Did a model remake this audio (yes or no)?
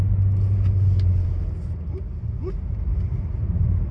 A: no